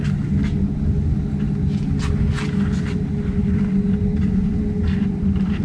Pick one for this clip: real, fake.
real